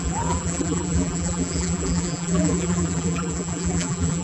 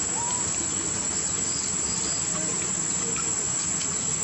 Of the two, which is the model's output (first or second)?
first